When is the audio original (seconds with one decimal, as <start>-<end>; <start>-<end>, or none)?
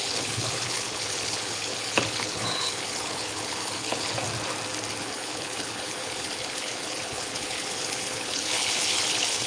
4.1-5.0